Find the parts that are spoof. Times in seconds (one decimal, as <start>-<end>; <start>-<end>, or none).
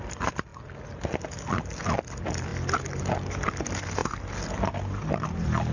none